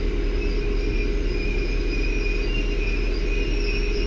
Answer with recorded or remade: recorded